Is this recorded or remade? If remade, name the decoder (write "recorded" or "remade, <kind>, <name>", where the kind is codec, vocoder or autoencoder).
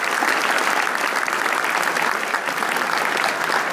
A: recorded